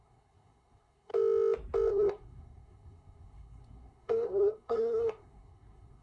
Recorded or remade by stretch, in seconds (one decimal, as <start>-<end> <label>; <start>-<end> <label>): 0.0-1.1 remade; 1.1-1.9 recorded; 1.9-6.0 remade